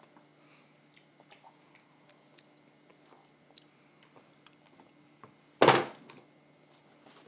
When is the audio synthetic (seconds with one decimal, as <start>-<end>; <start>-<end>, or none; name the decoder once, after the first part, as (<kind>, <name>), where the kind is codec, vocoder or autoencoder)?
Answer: none